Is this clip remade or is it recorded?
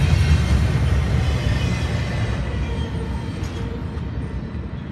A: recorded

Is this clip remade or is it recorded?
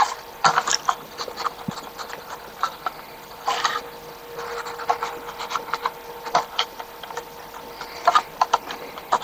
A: remade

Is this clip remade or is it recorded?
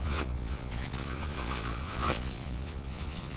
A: remade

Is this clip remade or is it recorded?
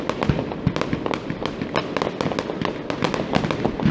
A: recorded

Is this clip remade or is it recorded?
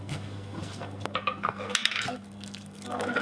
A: remade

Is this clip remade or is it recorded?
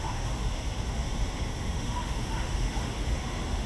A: remade